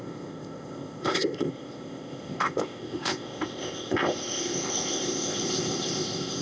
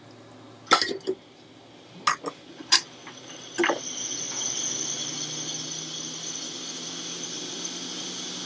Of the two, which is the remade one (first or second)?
first